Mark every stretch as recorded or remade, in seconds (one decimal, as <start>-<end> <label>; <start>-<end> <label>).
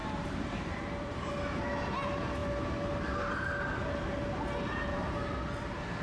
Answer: 0.0-1.3 remade; 1.3-6.0 recorded